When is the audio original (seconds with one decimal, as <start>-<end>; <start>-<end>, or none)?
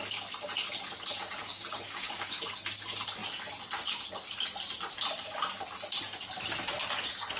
0.0-1.5; 2.3-7.4